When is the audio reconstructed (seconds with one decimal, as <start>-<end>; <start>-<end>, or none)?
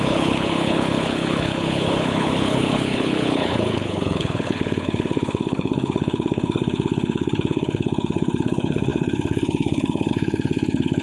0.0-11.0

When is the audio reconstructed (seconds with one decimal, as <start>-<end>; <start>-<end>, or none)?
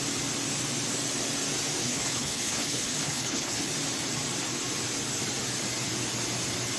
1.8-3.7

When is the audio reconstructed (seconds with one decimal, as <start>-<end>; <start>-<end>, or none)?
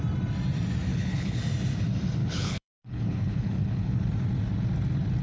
0.9-1.4; 2.2-4.0